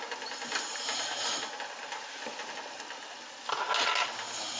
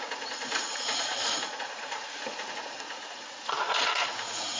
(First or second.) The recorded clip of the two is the first